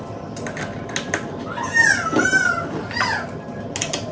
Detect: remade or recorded recorded